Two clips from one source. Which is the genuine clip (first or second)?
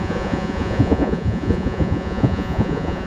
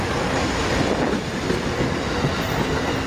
second